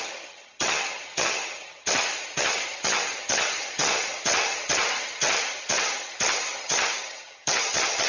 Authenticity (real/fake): fake